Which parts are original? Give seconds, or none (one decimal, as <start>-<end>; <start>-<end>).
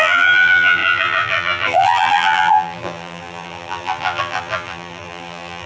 none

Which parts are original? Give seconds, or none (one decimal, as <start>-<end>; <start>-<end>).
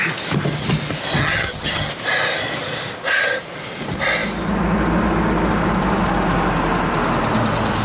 0.0-1.2; 1.9-7.8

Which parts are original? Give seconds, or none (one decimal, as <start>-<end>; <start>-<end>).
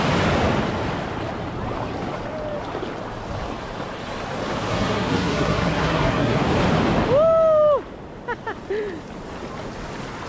0.0-4.7; 6.4-10.3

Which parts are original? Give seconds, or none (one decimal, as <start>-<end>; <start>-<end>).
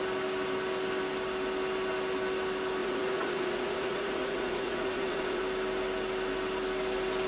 0.0-2.8; 5.4-7.3